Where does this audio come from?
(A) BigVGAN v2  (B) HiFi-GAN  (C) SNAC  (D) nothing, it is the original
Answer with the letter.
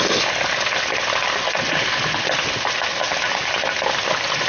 D